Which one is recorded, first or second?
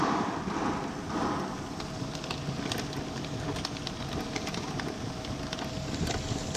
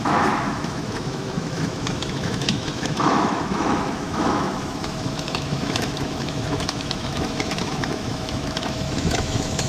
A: first